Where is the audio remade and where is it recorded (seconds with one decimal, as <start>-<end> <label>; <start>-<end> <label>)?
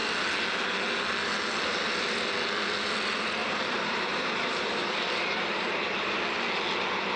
0.0-3.4 recorded; 3.4-6.2 remade; 6.2-7.2 recorded